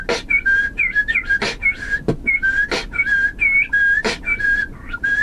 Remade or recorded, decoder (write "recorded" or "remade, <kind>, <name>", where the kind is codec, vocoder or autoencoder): recorded